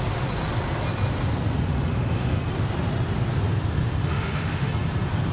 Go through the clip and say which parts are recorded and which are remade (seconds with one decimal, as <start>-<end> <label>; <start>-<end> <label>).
0.0-1.7 recorded; 1.7-2.4 remade; 2.4-4.0 recorded; 4.0-4.7 remade; 4.7-5.3 recorded